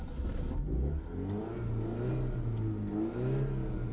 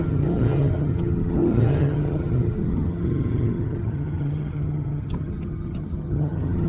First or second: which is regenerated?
second